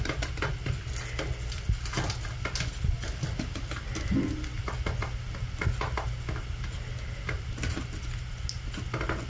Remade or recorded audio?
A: recorded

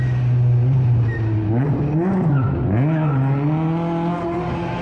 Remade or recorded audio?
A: recorded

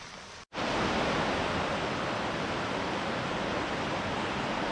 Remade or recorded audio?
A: recorded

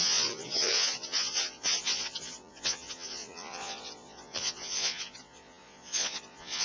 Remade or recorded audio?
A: remade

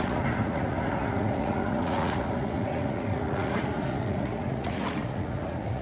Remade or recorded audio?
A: remade